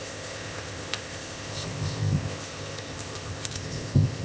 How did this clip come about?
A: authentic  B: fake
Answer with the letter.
B